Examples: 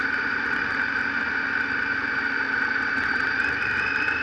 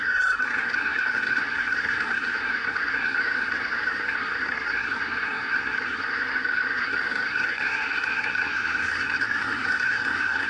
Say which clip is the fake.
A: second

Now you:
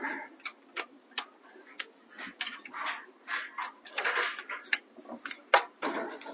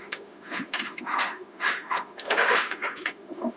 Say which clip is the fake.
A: second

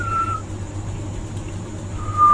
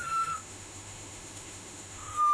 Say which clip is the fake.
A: second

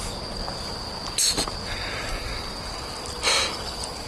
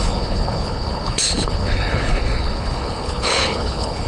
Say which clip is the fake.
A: second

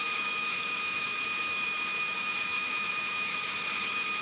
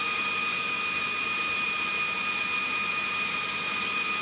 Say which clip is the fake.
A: first